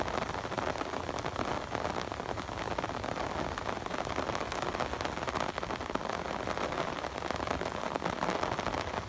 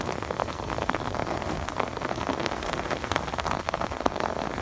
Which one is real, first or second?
first